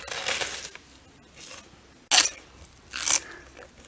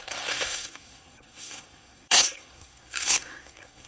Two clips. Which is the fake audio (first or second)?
second